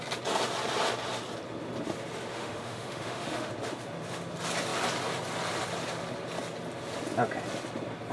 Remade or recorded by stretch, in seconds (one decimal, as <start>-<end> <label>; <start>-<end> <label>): 0.0-2.3 recorded; 2.3-3.5 remade; 3.5-8.1 recorded

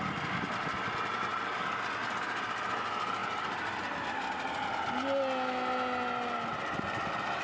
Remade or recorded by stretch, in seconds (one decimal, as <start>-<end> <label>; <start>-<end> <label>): 0.0-7.4 recorded

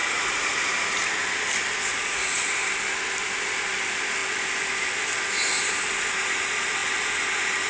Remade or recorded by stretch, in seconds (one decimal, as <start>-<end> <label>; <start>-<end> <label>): 0.0-1.1 remade; 1.1-1.9 recorded; 1.9-2.6 remade; 2.6-7.7 recorded